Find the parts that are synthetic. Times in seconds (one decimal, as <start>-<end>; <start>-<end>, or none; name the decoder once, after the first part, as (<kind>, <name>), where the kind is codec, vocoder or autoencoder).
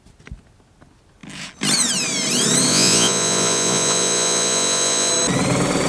2.7-5.1 (vocoder, Vocos)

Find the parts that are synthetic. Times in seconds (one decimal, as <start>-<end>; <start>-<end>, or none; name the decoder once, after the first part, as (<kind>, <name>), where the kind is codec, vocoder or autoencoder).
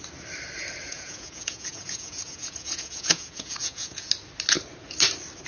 0.9-4.1 (vocoder, Vocos)